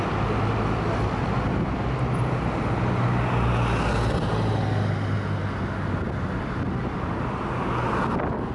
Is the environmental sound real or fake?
real